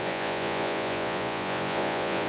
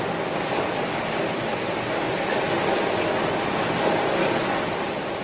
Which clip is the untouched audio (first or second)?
second